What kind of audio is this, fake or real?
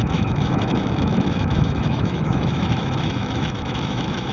fake